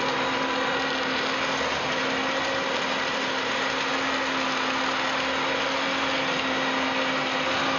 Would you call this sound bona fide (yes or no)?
yes